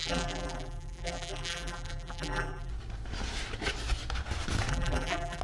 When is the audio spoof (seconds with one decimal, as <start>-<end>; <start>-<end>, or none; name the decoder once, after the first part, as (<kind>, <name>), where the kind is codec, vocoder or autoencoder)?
0.0-2.7 (vocoder, BigVGAN v2); 4.7-5.4

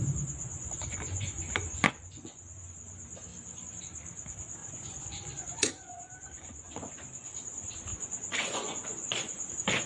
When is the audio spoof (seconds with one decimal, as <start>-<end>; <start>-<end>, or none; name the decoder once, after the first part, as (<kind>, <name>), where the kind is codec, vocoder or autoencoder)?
0.4-2.4 (vocoder, Vocos); 4.6-6.9; 7.9-9.5

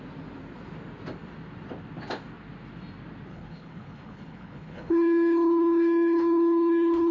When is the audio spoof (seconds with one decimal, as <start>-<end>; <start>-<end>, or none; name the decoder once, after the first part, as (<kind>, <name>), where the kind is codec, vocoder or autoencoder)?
3.3-7.1 (codec, HILCodec)